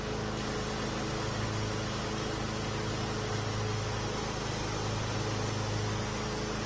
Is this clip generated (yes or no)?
no